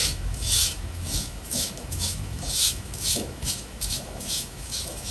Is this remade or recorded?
remade